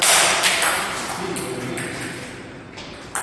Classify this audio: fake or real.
real